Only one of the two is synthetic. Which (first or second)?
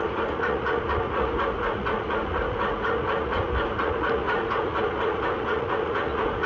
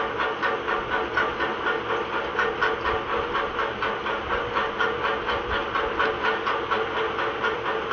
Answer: first